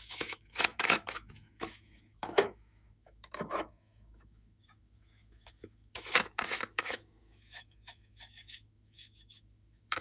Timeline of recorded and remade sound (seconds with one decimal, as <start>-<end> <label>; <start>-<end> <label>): 0.0-10.0 remade